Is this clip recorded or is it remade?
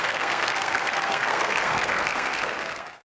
remade